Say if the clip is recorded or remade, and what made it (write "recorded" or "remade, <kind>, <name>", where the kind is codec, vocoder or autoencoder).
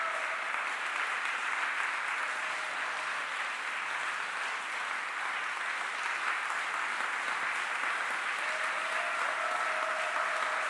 recorded